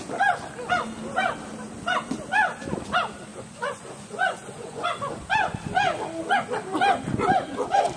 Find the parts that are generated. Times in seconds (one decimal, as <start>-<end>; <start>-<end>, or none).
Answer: 3.3-5.1